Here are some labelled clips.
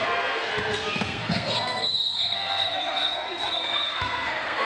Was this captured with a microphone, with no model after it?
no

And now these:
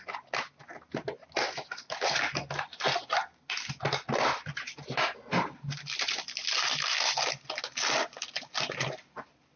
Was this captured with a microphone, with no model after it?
yes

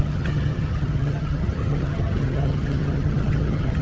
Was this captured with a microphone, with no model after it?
no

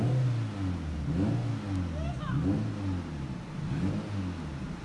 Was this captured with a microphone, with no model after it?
yes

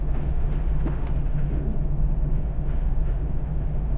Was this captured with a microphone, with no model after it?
no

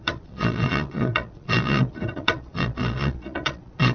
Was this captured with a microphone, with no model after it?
no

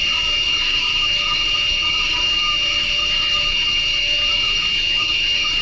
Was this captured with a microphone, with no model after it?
no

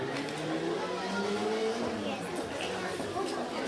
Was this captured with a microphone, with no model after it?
yes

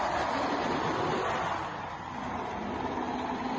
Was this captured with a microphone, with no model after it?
yes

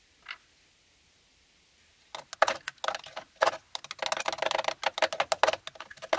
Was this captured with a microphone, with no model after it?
yes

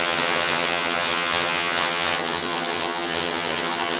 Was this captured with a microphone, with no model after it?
no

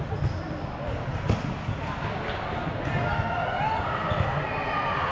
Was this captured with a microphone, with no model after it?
yes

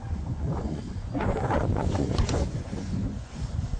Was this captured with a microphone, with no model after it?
no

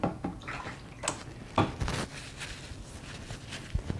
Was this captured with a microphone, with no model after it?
yes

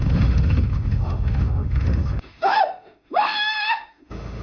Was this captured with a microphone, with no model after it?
no